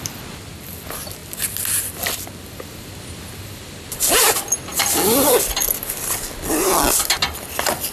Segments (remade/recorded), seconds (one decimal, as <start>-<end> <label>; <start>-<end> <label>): 0.0-7.9 recorded